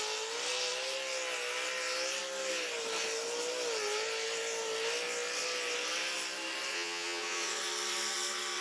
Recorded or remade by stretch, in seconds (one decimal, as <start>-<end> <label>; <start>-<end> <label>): 0.0-6.7 recorded; 6.7-7.6 remade; 7.6-8.6 recorded